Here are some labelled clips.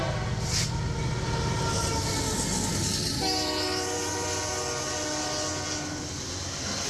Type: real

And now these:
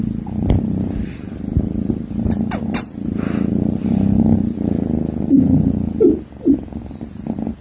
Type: real